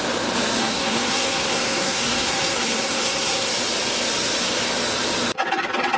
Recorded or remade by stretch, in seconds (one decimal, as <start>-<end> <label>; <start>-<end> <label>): 0.0-0.6 recorded; 0.6-3.5 remade; 3.5-6.0 recorded